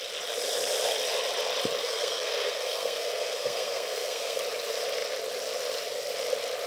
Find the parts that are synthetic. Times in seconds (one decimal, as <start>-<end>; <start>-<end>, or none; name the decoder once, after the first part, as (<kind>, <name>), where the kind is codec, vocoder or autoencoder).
1.8-4.4 (codec, SNAC)